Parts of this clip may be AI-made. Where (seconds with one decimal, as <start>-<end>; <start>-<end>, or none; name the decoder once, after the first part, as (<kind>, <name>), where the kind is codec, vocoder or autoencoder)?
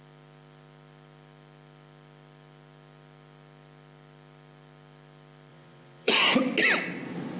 5.5-6.1 (vocoder, Vocos)